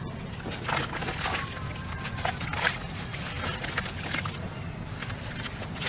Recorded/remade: recorded